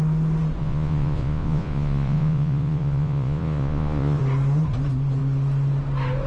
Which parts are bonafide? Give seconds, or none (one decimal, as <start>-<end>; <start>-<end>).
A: 0.0-0.6; 4.2-6.3